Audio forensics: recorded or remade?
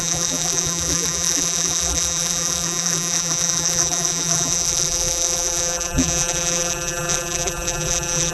remade